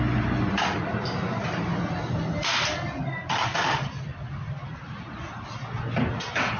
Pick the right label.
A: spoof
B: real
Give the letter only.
B